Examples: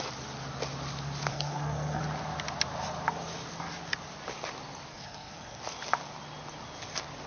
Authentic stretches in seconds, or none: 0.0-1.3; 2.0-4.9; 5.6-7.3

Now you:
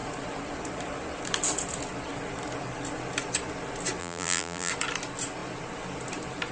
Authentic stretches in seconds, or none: 0.0-4.0; 4.7-6.5

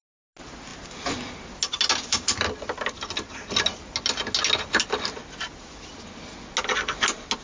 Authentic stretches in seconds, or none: 0.0-7.4

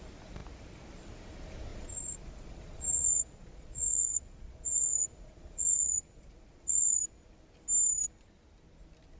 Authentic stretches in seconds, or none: 0.0-1.7; 7.0-9.2

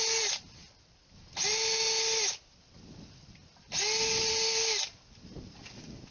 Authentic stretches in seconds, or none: 0.0-6.1

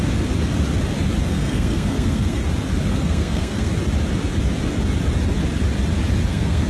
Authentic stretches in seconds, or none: 0.0-1.3; 2.4-2.9; 3.7-6.3